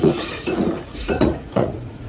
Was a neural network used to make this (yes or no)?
yes